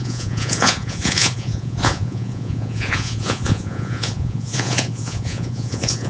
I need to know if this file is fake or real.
fake